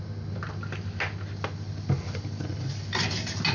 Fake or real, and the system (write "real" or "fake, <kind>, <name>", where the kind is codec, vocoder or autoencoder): real